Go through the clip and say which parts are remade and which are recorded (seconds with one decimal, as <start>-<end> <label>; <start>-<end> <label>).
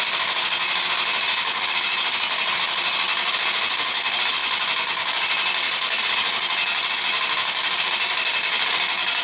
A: 0.0-9.2 recorded